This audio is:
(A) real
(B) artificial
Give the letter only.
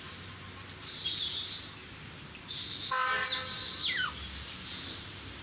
A